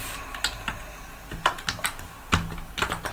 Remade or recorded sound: recorded